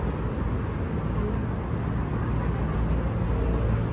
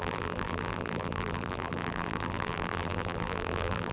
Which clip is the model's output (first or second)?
second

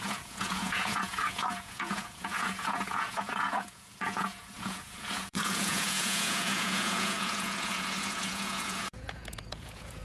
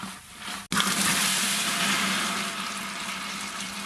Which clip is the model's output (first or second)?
first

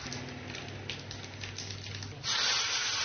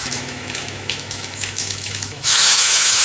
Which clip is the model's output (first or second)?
second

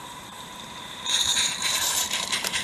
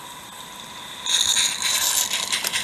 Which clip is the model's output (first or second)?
first